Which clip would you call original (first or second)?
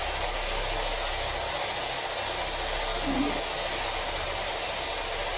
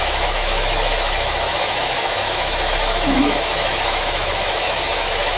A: first